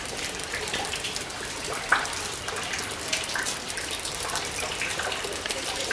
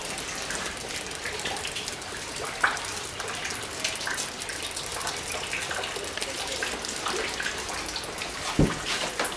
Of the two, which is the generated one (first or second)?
first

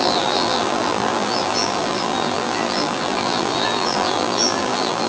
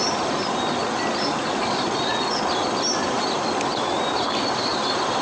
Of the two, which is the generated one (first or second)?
first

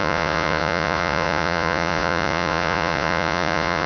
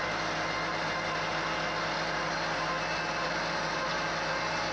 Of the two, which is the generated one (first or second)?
first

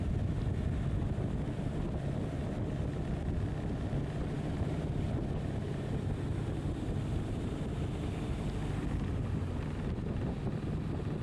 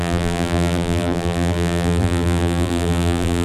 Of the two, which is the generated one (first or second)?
second